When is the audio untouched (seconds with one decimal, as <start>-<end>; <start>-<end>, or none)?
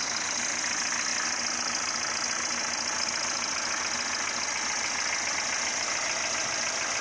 0.0-7.0